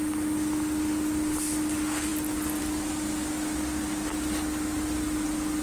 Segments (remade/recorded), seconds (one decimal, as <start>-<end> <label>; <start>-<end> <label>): 0.0-5.6 recorded